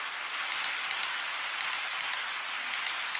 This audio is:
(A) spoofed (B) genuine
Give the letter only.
B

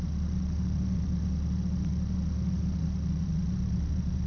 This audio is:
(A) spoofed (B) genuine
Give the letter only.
B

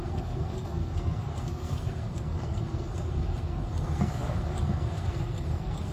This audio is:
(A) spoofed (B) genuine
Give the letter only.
A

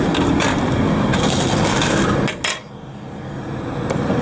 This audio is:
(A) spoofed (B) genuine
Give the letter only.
B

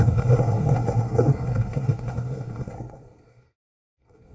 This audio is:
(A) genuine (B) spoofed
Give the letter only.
B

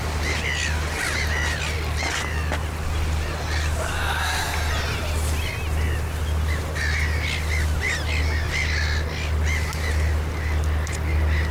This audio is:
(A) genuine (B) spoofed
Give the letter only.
A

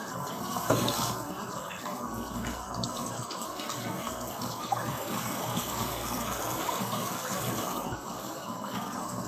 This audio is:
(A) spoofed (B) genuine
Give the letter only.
A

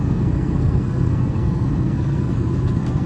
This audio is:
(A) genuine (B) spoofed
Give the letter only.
B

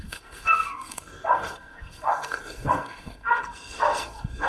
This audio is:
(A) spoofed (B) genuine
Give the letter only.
A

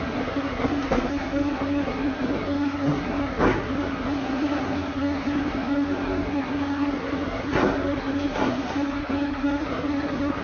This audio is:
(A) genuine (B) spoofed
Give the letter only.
B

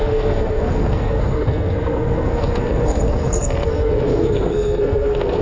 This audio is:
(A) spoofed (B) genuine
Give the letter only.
A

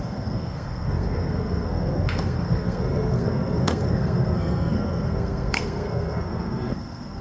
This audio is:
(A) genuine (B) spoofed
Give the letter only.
B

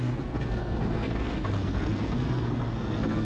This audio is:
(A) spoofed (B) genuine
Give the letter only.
A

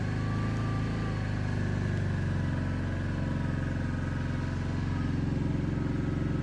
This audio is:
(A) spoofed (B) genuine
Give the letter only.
B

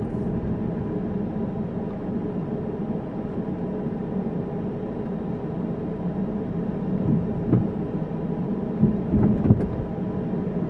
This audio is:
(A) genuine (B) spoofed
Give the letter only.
A